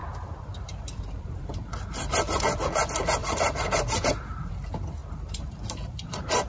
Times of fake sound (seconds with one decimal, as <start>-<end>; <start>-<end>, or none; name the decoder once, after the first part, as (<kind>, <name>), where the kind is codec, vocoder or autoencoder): 0.0-2.2 (vocoder, BigVGAN v2); 3.2-4.5; 5.0-6.5